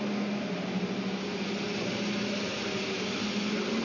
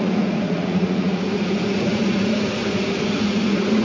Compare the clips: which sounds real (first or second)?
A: first